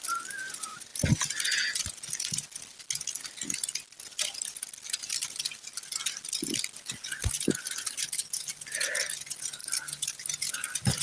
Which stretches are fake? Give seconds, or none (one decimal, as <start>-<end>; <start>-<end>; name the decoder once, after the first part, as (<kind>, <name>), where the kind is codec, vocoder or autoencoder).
9.6-10.5 (vocoder, BigVGAN v2)